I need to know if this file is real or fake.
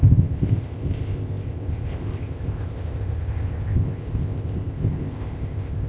fake